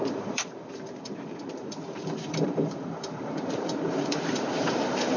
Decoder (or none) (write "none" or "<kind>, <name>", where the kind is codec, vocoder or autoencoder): vocoder, BigVGAN v2